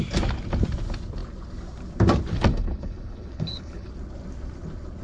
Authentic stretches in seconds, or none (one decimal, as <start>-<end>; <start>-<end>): 0.0-2.5; 3.9-5.0